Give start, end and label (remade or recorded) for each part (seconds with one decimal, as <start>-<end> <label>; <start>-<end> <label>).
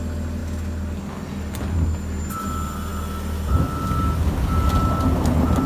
0.0-5.7 recorded